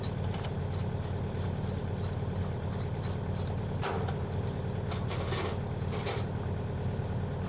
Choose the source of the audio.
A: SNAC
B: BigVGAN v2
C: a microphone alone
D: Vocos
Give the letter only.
C